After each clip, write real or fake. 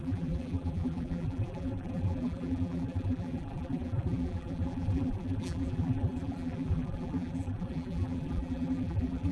fake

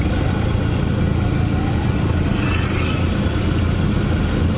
real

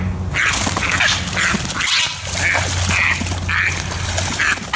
real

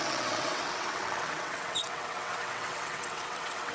fake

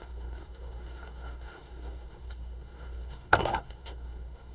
fake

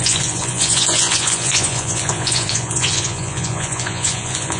fake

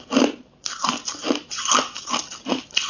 fake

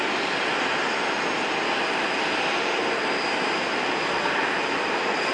real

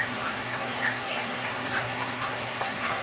fake